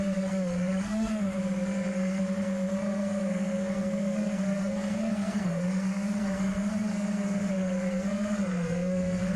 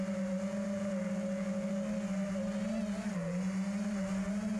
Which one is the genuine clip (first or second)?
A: second